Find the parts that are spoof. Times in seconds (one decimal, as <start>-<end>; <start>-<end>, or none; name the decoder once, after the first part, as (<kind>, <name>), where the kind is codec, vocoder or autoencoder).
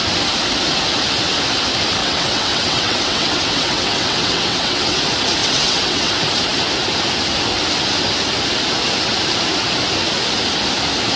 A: 2.0-5.0 (vocoder, WaveNeXt); 5.4-6.1